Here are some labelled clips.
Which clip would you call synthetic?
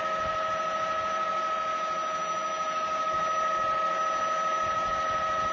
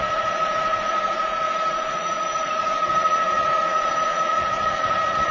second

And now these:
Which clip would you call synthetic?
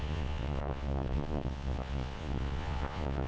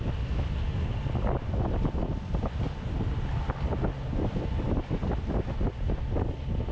first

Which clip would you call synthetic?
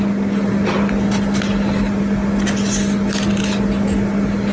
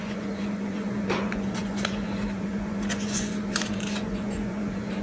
second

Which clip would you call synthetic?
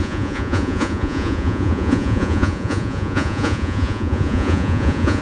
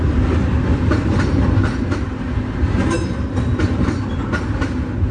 first